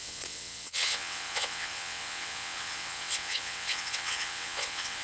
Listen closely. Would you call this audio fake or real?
fake